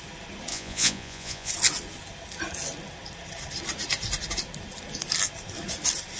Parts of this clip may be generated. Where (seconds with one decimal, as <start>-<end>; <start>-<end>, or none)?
0.5-1.5